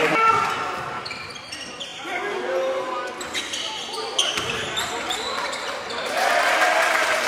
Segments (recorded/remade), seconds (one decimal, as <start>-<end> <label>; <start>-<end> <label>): 0.0-7.3 recorded